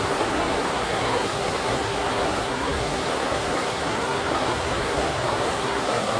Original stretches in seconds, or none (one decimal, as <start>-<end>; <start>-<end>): none